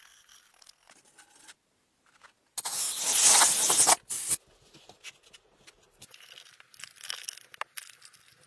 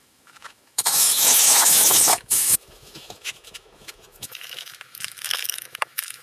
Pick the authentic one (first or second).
first